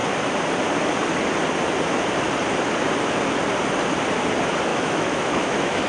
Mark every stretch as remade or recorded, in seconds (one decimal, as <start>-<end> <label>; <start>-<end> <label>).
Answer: 0.0-4.7 recorded; 4.7-5.9 remade